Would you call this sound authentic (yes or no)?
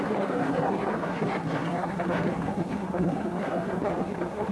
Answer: no